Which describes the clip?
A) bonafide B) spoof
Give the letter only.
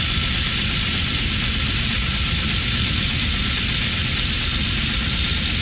A